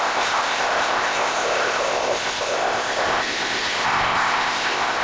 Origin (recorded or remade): remade